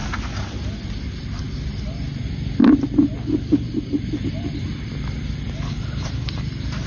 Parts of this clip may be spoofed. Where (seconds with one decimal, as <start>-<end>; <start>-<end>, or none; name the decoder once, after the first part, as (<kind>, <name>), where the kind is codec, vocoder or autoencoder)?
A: none